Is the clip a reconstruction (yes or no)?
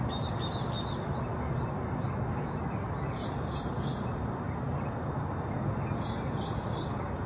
no